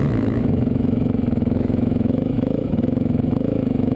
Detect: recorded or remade remade